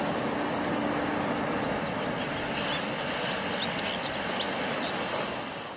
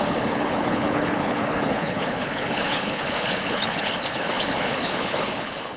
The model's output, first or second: second